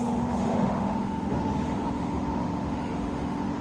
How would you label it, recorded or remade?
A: remade